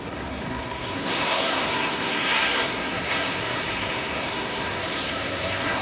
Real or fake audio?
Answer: fake